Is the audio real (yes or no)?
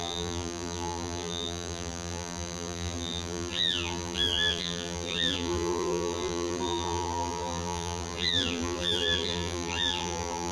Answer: no